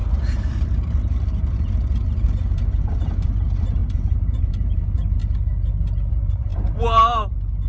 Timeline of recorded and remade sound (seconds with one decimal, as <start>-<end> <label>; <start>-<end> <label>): 0.0-5.2 remade; 5.2-6.1 recorded; 6.1-7.7 remade